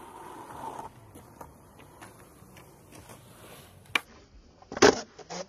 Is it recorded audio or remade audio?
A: recorded